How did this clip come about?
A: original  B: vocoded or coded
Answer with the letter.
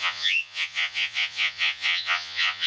B